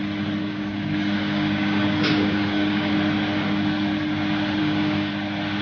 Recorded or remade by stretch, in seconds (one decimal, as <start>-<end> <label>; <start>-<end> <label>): 0.0-0.4 recorded; 0.4-2.9 remade; 2.9-4.6 recorded; 4.6-5.1 remade; 5.1-5.6 recorded